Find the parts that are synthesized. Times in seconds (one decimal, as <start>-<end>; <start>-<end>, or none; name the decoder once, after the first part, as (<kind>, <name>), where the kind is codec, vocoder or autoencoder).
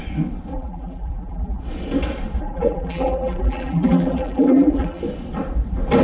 0.5-1.6 (vocoder, BigVGAN v2); 2.4-5.0